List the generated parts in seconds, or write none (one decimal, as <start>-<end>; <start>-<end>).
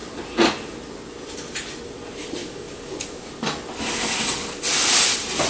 2.4-3.3